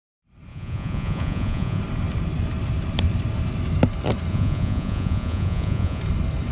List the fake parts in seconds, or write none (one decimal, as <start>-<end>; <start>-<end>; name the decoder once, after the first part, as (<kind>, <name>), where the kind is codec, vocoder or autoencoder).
0.5-1.8 (vocoder, Vocos); 4.3-6.0